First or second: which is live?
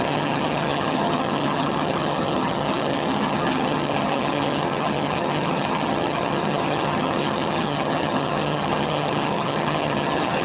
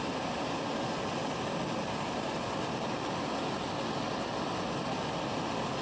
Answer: second